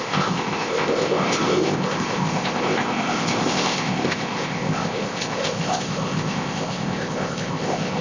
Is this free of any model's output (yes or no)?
no